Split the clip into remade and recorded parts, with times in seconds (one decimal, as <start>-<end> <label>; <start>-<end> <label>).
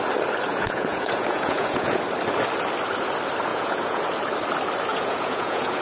0.0-0.5 recorded; 0.5-2.0 remade; 2.0-3.5 recorded; 3.5-4.0 remade; 4.0-4.9 recorded; 4.9-5.8 remade